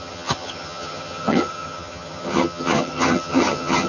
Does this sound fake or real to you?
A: fake